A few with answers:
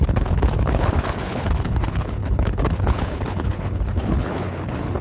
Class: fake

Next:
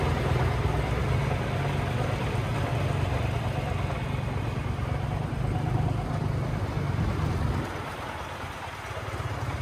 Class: real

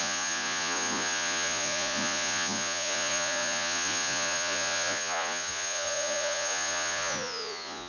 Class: fake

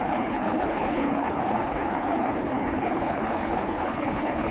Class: fake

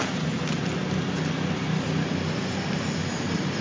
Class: real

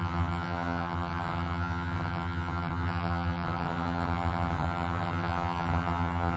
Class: fake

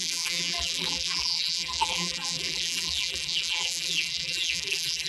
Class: fake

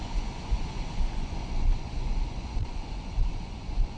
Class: fake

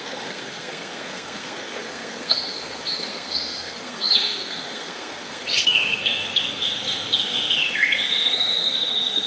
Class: fake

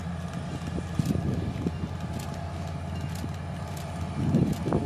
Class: real